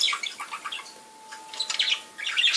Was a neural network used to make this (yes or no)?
yes